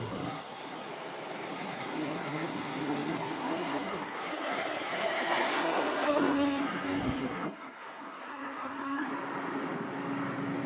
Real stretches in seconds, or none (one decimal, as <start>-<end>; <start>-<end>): 0.9-1.5; 9.1-10.7